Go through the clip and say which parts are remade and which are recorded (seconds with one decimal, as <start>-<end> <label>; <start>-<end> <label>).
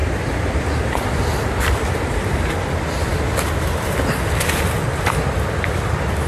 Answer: 0.0-6.3 remade